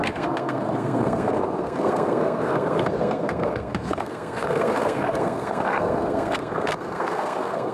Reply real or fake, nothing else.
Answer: fake